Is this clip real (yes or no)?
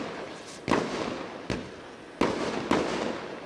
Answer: yes